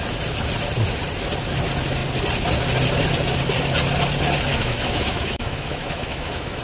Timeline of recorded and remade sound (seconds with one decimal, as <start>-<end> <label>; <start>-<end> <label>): 0.0-4.5 recorded; 4.5-6.6 remade